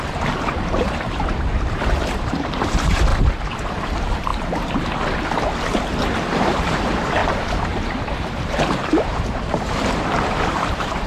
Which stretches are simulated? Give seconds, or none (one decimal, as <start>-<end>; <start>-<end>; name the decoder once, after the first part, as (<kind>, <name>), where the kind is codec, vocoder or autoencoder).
0.0-3.1 (vocoder, BigVGAN v2); 3.8-4.3; 5.8-11.1